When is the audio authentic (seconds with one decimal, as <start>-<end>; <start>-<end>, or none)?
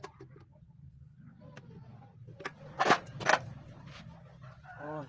0.0-5.1